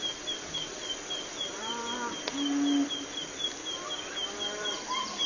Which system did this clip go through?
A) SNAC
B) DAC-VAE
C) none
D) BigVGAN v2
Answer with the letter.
C